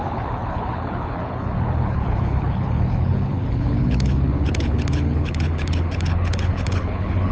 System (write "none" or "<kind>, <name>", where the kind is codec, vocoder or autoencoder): codec, HILCodec